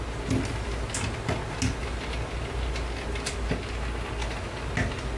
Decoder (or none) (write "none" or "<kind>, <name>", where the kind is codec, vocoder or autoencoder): none